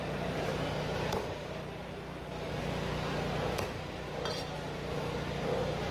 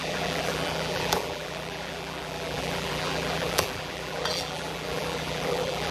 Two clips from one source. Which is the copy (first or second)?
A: second